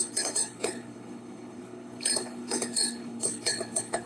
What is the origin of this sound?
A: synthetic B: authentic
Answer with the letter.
A